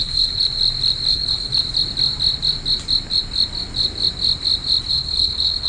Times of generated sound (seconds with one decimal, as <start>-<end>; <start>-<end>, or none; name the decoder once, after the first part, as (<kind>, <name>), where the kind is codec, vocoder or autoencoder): 0.0-0.4 (codec, HILCodec); 1.1-1.5; 4.9-5.7